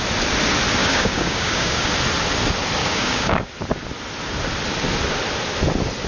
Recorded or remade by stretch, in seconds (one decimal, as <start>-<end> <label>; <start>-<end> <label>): 0.0-0.8 recorded; 0.8-1.9 remade; 1.9-2.8 recorded; 2.8-3.5 remade; 3.5-6.1 recorded